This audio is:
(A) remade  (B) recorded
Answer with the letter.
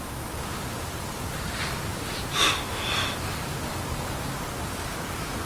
B